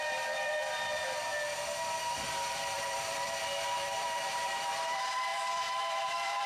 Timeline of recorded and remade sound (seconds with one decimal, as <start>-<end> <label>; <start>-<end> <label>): 0.0-1.3 remade; 1.3-2.5 recorded; 2.5-6.5 remade